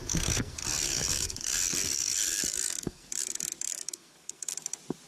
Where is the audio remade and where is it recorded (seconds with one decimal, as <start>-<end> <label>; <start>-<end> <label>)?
0.0-3.1 remade; 3.1-3.7 recorded; 3.7-4.5 remade; 4.5-5.1 recorded